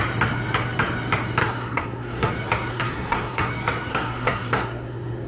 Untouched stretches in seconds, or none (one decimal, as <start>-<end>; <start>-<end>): 0.0-1.4; 2.3-2.7; 3.5-3.9